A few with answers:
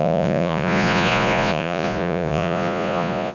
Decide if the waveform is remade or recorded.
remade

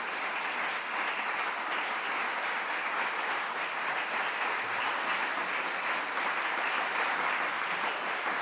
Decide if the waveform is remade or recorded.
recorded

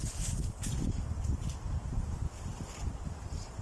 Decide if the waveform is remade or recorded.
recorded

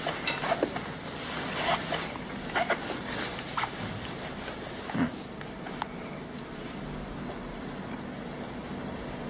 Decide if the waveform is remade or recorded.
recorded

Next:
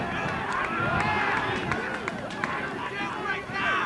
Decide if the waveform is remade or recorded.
recorded